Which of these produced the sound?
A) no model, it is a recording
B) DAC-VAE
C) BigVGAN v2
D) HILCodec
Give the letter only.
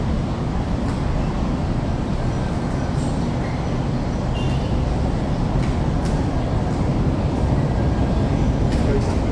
A